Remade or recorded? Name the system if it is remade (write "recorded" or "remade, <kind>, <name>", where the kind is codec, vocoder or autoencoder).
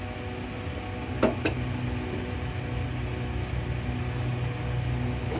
recorded